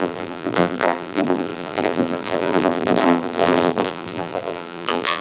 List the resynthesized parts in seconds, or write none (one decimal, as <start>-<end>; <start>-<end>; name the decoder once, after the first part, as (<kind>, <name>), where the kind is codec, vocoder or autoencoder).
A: 0.0-5.2 (vocoder, BigVGAN v2)